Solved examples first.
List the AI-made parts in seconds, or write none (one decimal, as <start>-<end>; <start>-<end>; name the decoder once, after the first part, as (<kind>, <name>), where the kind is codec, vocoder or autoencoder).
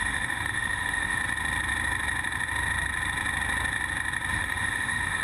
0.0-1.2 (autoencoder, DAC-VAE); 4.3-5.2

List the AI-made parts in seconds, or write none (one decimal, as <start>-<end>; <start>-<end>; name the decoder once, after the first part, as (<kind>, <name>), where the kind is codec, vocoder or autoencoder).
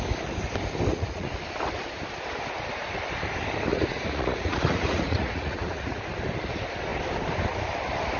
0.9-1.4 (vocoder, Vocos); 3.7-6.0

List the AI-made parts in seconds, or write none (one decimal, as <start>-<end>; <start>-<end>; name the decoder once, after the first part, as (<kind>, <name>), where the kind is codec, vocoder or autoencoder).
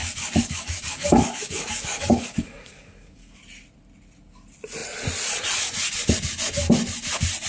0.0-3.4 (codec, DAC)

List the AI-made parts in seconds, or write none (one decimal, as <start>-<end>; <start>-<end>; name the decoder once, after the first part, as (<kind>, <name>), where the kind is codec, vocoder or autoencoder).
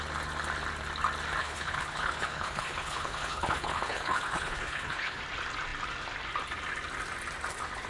1.4-5.2 (codec, HILCodec)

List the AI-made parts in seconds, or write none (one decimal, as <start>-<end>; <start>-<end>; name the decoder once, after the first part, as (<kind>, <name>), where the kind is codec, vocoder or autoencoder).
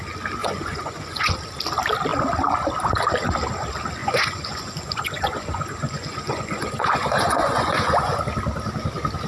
0.4-1.3 (vocoder, Vocos); 4.0-8.2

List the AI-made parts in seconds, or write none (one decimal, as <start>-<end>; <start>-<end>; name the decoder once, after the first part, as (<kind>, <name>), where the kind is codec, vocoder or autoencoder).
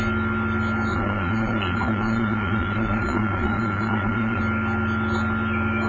0.9-4.4 (vocoder, Vocos)